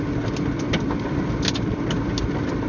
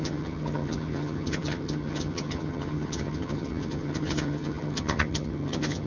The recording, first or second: first